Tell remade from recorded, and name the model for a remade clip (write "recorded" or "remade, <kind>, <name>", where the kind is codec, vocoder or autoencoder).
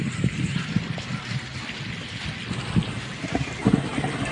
recorded